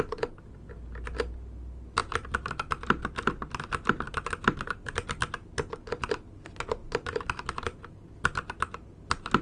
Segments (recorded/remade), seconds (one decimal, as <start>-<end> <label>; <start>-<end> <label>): 0.0-2.0 recorded; 2.0-3.6 remade; 3.6-9.4 recorded